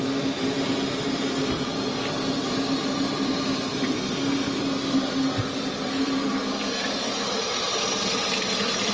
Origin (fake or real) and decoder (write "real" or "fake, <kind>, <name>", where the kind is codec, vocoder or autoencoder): real